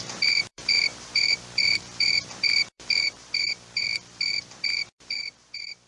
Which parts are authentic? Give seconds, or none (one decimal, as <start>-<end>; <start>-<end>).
none